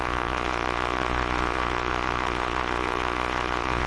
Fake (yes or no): yes